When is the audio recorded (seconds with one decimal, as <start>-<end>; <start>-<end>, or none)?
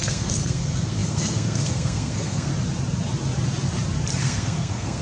2.5-4.2